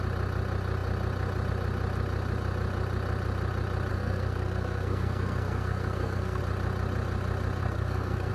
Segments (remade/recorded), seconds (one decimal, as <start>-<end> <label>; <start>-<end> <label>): 0.0-3.9 recorded; 3.9-6.4 remade; 6.4-7.6 recorded; 7.6-8.3 remade